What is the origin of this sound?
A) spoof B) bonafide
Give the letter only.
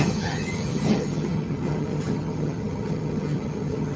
A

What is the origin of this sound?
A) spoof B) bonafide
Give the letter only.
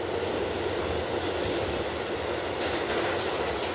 B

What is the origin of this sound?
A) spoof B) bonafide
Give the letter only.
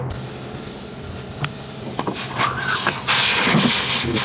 B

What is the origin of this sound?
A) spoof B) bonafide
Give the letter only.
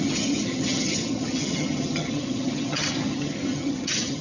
A